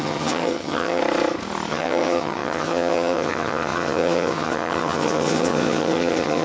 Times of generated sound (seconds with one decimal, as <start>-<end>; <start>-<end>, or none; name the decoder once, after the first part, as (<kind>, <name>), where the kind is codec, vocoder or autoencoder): 0.0-1.0 (vocoder, HiFi-GAN); 1.7-6.4